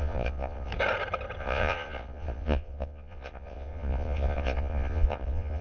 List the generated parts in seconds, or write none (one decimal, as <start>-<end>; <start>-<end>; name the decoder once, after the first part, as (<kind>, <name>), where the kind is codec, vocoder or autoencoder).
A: 0.0-0.7 (vocoder, Vocos); 1.4-5.6